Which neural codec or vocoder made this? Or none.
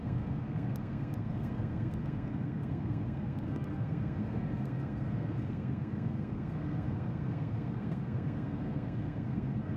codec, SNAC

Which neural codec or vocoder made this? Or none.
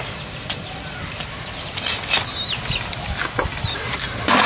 none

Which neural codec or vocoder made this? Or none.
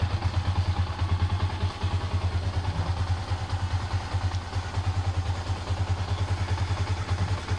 none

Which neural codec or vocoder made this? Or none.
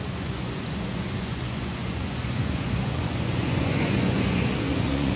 vocoder, Vocos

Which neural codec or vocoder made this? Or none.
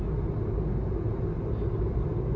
none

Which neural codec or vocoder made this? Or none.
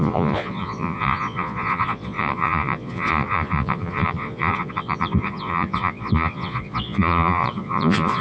vocoder, Vocos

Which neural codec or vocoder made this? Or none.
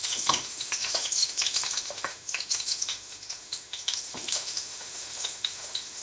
autoencoder, DAC-VAE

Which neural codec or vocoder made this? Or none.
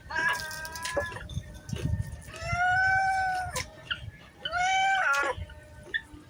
none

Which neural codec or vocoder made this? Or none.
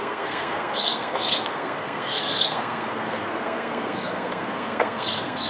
codec, SNAC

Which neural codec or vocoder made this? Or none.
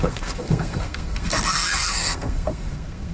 codec, SNAC